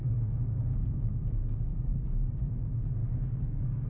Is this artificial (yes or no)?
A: yes